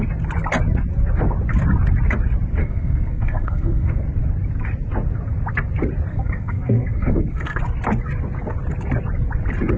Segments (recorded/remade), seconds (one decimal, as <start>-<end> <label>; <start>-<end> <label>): 0.0-2.6 recorded; 2.6-4.0 remade; 4.0-6.1 recorded; 6.1-7.6 remade; 7.6-9.8 recorded